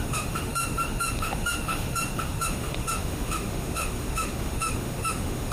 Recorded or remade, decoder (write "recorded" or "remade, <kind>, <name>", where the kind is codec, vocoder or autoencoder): remade, autoencoder, DAC-VAE